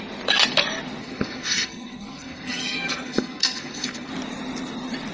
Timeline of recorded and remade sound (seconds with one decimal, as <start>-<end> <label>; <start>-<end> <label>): 0.0-1.0 recorded; 1.0-4.1 remade; 4.1-5.1 recorded